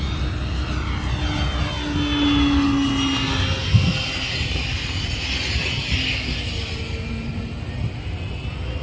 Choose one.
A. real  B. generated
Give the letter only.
A